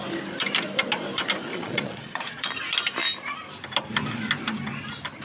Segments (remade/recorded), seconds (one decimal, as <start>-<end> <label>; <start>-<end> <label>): 0.0-1.5 recorded; 1.5-2.5 remade; 2.5-5.2 recorded